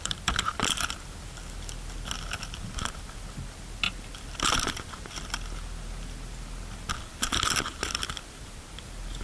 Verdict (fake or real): real